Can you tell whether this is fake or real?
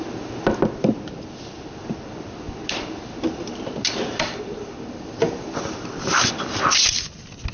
real